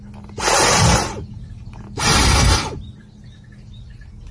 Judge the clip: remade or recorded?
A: recorded